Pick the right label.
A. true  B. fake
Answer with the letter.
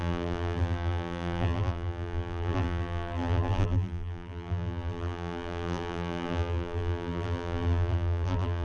B